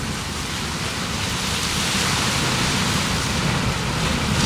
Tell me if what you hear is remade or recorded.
recorded